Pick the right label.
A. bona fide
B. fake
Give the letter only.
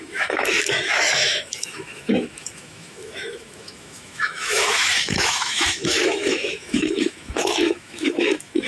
B